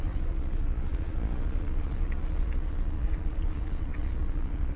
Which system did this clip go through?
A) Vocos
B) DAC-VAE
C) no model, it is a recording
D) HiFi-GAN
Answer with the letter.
A